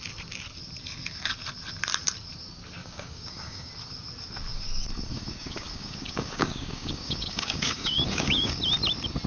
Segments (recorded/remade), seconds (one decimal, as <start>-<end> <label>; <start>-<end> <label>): 0.0-2.8 recorded; 2.8-3.7 remade; 3.7-5.1 recorded; 5.1-8.6 remade; 8.6-9.3 recorded